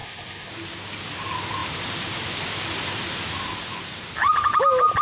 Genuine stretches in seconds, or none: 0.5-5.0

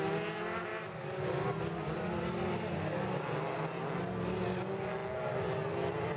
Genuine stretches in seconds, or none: 0.0-6.2

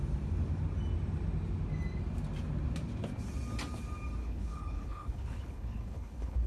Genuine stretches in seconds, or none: 0.0-4.2

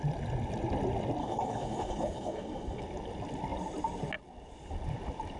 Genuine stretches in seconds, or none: 0.0-1.2; 2.8-5.4

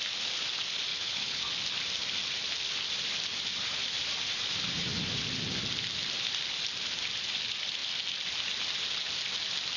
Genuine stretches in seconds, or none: 0.0-0.9; 1.4-9.8